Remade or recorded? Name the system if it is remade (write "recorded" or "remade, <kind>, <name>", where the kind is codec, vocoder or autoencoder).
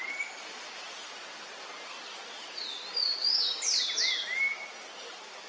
recorded